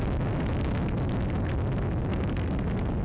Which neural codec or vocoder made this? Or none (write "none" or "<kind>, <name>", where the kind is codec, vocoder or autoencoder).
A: none